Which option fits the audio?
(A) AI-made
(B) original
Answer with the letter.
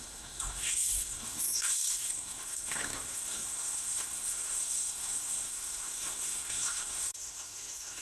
A